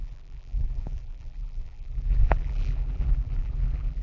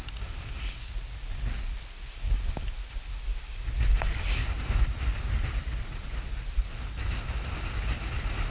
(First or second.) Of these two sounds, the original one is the second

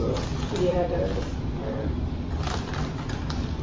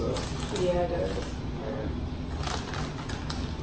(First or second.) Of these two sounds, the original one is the second